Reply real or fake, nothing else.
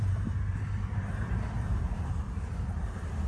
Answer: fake